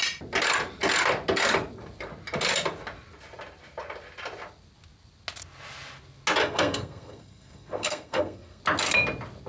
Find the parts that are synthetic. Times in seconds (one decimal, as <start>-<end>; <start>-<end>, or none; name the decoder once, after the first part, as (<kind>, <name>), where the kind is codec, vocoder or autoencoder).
6.4-8.6 (codec, SNAC)